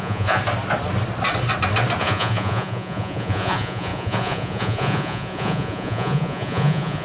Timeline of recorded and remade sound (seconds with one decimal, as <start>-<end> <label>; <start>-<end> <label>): 0.0-0.4 remade; 0.4-2.0 recorded; 2.0-7.0 remade

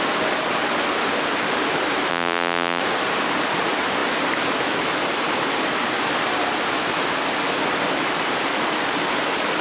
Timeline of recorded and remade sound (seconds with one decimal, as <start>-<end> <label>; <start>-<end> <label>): 0.0-2.1 recorded; 2.1-2.8 remade; 2.8-9.6 recorded

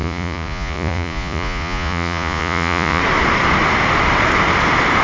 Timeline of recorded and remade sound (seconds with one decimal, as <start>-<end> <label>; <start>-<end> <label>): 0.0-3.0 remade; 3.0-5.0 recorded

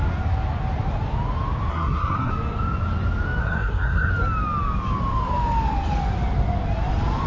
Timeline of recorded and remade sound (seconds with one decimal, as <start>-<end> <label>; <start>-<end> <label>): 0.0-1.7 recorded; 1.7-2.3 remade; 2.3-3.4 recorded; 3.4-4.1 remade; 4.1-7.3 recorded